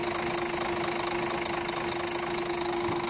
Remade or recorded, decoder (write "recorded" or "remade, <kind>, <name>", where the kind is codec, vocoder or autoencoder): recorded